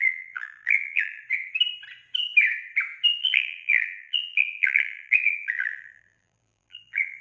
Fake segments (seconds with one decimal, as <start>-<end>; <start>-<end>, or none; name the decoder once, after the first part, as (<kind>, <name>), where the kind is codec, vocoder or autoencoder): 0.0-1.2 (vocoder, BigVGAN v2); 3.2-7.2